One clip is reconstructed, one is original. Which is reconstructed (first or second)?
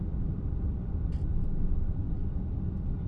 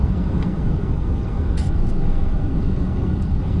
second